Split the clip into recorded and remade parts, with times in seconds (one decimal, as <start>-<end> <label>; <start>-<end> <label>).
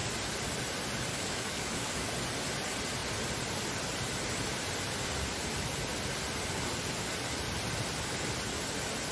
0.0-1.1 recorded; 1.1-2.1 remade; 2.1-9.1 recorded